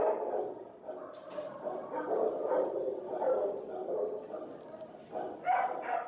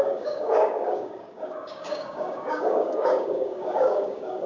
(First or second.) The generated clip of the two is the second